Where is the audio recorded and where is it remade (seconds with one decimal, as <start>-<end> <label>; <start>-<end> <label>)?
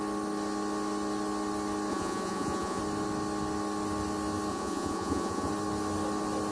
0.0-1.9 recorded; 1.9-2.8 remade; 2.8-4.5 recorded; 4.5-5.5 remade; 5.5-6.5 recorded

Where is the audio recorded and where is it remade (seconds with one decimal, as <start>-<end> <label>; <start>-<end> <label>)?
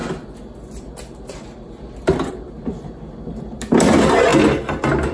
0.0-5.1 recorded